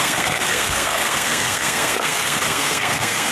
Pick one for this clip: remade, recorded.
remade